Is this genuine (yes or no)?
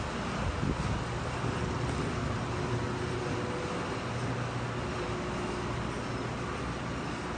yes